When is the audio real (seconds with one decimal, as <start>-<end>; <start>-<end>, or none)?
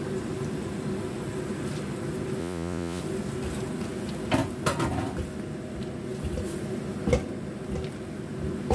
0.0-2.4; 3.0-8.7